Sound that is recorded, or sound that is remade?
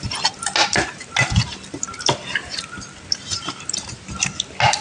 recorded